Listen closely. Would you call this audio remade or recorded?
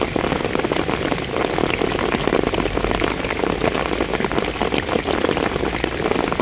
recorded